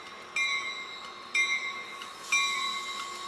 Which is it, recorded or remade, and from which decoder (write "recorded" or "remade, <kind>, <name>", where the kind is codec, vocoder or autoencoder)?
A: recorded